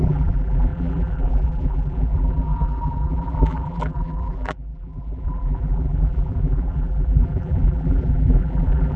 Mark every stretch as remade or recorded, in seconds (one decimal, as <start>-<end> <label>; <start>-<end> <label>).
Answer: 0.0-9.0 remade